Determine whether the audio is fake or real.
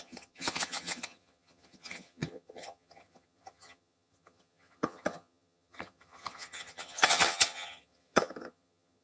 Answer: fake